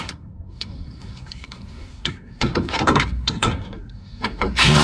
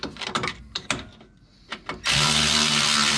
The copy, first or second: first